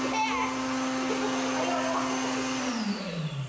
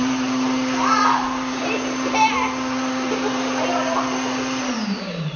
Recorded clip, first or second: first